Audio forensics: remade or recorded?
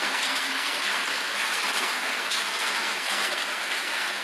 remade